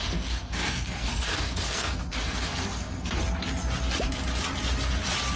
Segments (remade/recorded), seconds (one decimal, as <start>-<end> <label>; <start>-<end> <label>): 0.0-3.2 remade; 3.2-5.4 recorded